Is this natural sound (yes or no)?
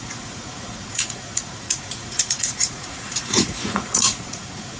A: no